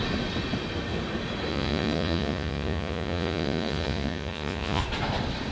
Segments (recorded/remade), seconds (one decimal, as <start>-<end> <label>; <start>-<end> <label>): 0.0-1.5 recorded; 1.5-4.8 remade; 4.8-5.5 recorded